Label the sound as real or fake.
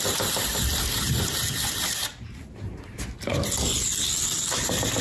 real